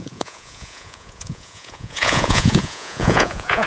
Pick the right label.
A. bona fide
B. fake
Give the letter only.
B